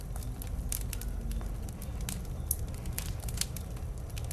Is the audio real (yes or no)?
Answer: yes